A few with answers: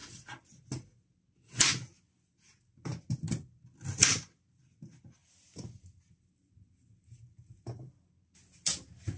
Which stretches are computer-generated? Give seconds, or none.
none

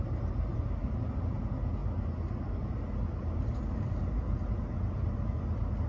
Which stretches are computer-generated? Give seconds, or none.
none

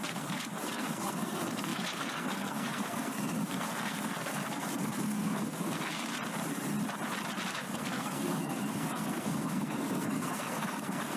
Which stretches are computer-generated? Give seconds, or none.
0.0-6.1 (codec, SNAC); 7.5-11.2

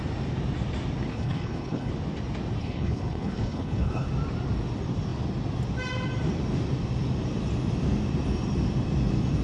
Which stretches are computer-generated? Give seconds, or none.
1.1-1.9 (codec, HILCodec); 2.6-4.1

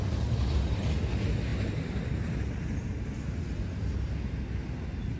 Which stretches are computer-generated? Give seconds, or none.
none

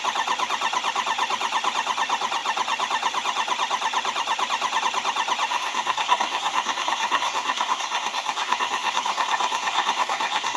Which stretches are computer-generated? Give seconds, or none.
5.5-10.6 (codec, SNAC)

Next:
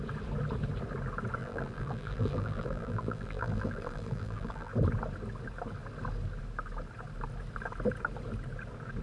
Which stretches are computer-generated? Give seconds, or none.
1.4-4.7 (vocoder, BigVGAN v2)

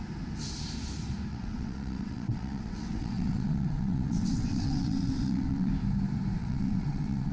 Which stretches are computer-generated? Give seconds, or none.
1.3-5.7 (vocoder, WaveNeXt); 6.4-7.3